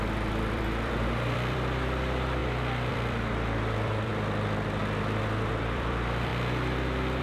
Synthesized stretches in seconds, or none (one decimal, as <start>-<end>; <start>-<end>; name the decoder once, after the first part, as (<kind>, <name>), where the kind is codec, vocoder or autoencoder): 0.0-2.4 (vocoder, BigVGAN v2); 2.9-4.1; 5.5-6.3